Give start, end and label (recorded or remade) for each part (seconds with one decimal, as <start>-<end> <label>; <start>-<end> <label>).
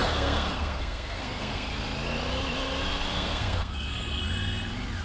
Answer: 0.0-1.7 remade; 1.7-3.1 recorded; 3.1-4.2 remade; 4.2-5.0 recorded